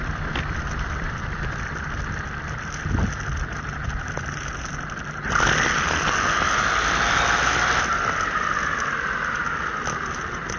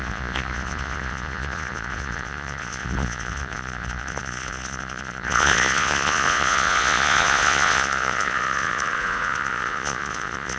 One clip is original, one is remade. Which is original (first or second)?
first